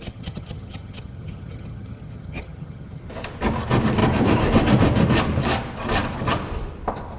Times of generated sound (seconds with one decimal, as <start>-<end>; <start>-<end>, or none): 0.0-3.0